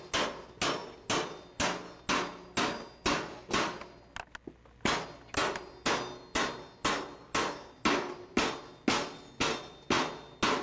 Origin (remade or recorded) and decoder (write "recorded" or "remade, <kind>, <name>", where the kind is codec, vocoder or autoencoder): recorded